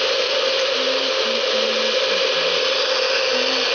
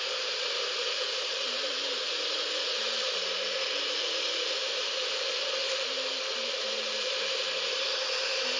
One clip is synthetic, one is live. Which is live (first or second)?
first